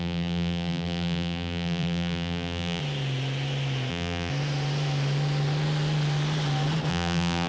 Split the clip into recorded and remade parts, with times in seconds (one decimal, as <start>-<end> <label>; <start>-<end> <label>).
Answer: 0.0-2.8 remade; 2.8-3.9 recorded; 3.9-4.3 remade; 4.3-6.9 recorded; 6.9-7.5 remade